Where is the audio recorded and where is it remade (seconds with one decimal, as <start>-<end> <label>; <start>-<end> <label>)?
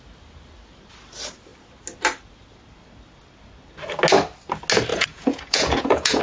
0.0-4.9 recorded; 4.9-6.2 remade